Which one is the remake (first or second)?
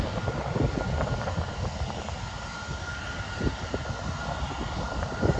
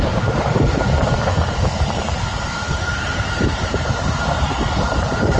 second